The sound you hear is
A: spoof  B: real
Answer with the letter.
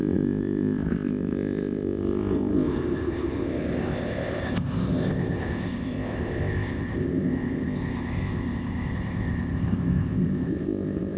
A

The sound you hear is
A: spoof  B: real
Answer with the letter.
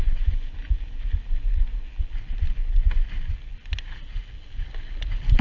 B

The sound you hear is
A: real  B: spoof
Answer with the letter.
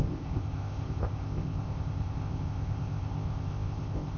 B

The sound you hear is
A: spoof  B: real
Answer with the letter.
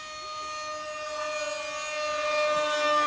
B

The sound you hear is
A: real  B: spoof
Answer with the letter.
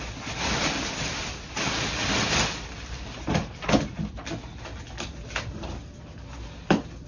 A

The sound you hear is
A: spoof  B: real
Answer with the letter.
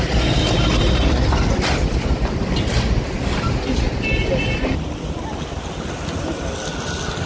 B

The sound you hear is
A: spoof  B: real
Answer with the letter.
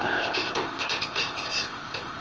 A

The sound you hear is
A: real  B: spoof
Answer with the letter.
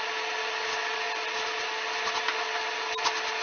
A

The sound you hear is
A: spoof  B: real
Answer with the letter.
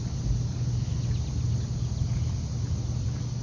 B